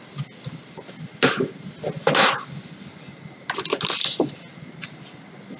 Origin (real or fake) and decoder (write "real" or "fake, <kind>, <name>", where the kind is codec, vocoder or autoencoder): real